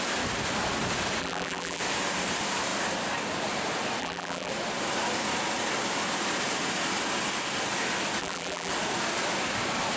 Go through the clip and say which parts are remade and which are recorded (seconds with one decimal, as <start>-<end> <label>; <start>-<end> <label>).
0.0-1.2 recorded; 1.2-1.8 remade; 1.8-4.0 recorded; 4.0-4.5 remade; 4.5-8.2 recorded; 8.2-8.7 remade; 8.7-10.0 recorded